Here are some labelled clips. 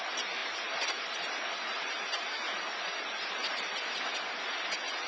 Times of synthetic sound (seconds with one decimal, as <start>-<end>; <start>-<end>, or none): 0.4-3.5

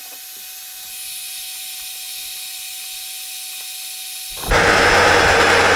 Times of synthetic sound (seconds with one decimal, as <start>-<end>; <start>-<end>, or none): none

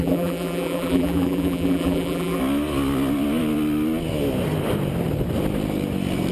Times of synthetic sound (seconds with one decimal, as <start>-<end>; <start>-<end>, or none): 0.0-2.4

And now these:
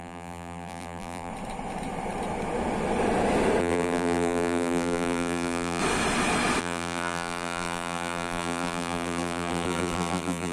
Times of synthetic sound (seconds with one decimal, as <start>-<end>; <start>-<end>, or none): 0.0-1.3; 3.6-5.8; 6.6-10.5

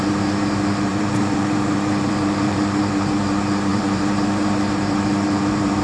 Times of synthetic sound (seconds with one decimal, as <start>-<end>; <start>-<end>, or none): 0.0-5.8